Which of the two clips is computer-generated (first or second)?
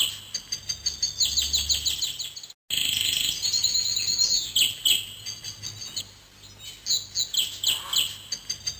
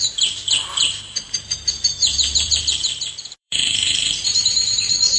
second